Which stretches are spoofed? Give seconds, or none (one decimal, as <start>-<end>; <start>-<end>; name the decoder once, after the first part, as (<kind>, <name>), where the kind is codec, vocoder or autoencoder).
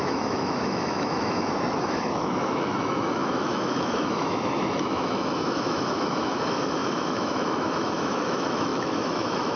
0.0-9.6 (autoencoder, DAC-VAE)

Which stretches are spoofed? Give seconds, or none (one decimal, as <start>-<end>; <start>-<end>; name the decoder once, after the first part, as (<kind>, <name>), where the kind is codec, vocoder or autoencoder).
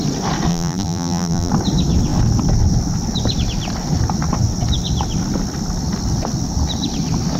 0.5-1.5 (vocoder, BigVGAN v2)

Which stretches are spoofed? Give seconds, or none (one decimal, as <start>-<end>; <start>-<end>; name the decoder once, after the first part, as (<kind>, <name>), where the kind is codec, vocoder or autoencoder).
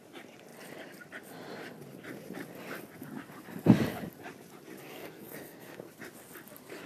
4.8-5.9 (codec, SNAC)